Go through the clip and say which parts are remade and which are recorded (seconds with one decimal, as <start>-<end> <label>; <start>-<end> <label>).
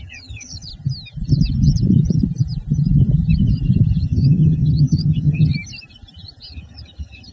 0.0-0.7 remade; 0.7-4.0 recorded; 4.0-5.5 remade; 5.5-6.5 recorded; 6.5-7.3 remade